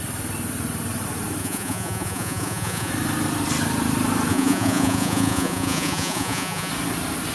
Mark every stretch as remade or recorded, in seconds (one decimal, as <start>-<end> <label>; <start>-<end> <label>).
0.0-1.4 recorded; 1.4-2.9 remade; 2.9-4.3 recorded; 4.3-6.7 remade; 6.7-7.3 recorded